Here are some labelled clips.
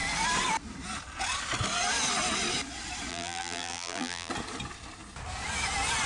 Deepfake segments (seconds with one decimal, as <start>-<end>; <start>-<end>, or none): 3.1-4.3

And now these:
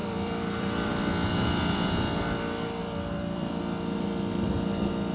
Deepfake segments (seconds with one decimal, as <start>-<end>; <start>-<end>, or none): 0.0-0.9; 2.8-3.5

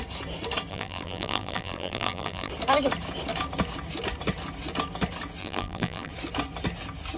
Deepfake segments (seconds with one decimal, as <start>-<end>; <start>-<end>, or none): 0.7-2.5; 5.4-6.1

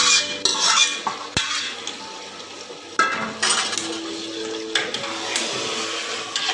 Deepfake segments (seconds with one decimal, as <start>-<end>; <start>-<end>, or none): none